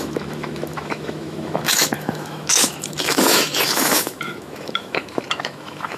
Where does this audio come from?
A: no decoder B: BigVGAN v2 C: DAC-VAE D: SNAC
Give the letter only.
C